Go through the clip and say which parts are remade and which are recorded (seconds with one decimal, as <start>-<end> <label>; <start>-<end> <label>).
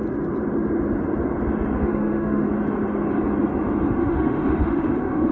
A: 0.0-1.8 recorded; 1.8-2.5 remade; 2.5-4.0 recorded; 4.0-5.3 remade